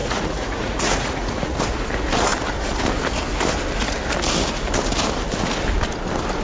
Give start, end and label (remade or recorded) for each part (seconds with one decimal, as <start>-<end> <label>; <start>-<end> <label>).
0.0-1.6 remade; 1.6-6.4 recorded